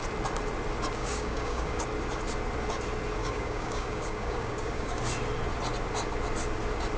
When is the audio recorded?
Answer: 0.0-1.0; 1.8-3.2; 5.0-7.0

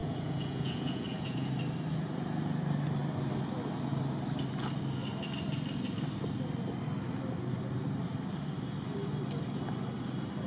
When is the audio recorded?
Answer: 1.5-10.5

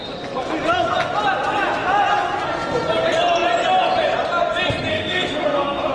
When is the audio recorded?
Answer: 0.0-4.9

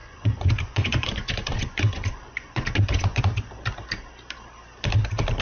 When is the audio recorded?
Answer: 3.2-5.4